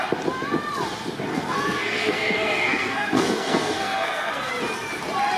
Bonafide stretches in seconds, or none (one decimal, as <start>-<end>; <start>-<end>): 0.0-1.3; 4.5-5.4